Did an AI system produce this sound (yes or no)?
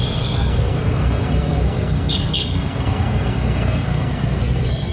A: yes